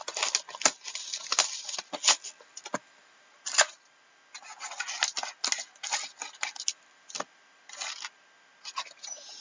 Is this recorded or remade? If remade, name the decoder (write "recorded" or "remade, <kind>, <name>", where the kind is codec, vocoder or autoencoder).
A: recorded